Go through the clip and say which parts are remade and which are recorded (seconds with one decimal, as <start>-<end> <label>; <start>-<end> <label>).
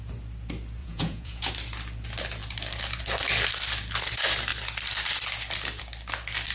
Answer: 0.0-0.8 recorded; 0.8-1.5 remade; 1.5-6.5 recorded